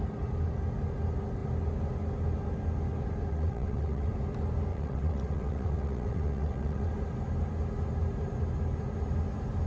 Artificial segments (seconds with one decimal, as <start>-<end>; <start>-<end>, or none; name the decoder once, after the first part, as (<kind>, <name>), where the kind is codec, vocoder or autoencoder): 3.3-4.1 (vocoder, WaveNeXt); 4.7-6.9